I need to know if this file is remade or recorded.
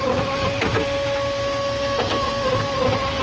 recorded